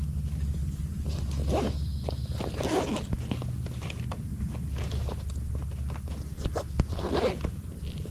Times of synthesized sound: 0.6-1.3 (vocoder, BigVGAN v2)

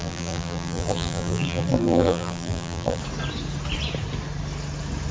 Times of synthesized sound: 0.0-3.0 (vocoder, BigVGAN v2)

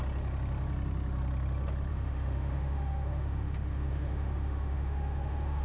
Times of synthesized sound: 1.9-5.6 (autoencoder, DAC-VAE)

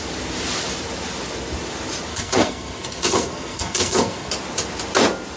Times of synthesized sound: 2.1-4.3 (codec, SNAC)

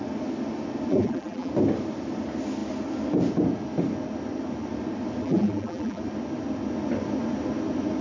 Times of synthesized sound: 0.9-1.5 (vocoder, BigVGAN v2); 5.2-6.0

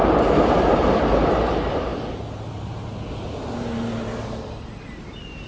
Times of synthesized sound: 0.0-1.9 (vocoder, BigVGAN v2)